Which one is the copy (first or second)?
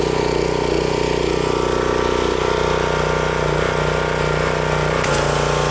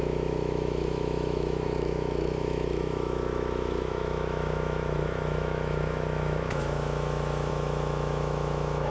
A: second